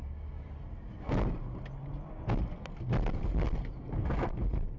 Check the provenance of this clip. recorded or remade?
recorded